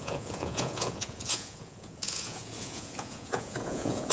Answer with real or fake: fake